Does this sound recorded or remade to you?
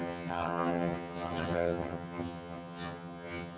remade